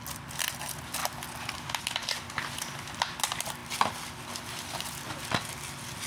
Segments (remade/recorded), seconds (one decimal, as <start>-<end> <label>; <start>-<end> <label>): 0.0-6.1 recorded